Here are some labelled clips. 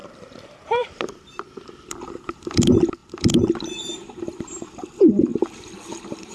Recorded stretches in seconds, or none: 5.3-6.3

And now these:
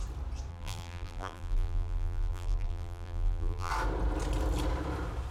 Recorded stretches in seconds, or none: 0.0-0.5; 3.7-5.3

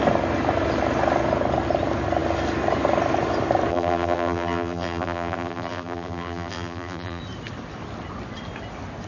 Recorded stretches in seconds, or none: 0.0-3.7; 7.2-9.1